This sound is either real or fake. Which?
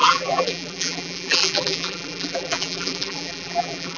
fake